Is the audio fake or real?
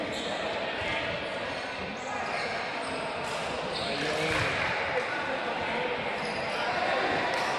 real